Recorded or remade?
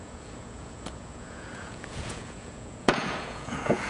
remade